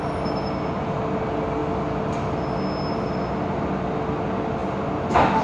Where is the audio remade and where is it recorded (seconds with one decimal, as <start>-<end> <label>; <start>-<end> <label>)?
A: 0.0-5.4 recorded